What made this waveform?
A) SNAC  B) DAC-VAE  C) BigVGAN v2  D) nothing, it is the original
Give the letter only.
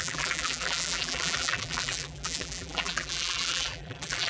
C